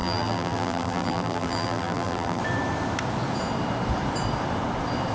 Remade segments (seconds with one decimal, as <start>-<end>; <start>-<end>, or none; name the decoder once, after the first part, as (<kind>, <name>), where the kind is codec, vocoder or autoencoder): 0.0-2.4 (vocoder, BigVGAN v2)